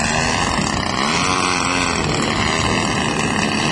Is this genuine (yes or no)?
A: yes